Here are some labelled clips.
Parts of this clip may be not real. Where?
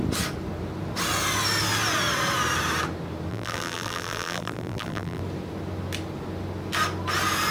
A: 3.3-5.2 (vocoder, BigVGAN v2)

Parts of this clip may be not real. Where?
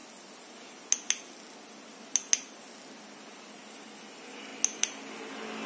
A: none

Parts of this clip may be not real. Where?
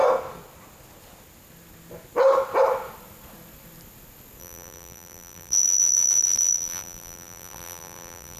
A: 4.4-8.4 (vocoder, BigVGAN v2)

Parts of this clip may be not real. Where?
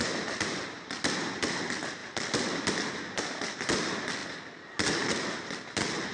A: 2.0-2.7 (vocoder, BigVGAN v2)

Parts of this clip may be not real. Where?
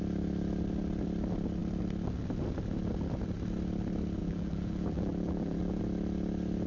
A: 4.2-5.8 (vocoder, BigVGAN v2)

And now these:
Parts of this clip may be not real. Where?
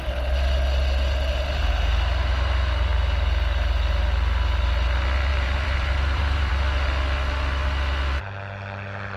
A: 5.3-6.5 (vocoder, BigVGAN v2)